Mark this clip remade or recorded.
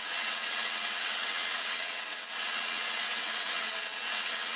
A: remade